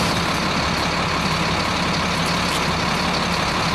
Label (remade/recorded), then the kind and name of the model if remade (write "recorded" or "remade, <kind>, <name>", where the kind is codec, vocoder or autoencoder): recorded